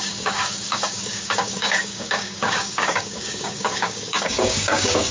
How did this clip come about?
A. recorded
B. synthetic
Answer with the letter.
B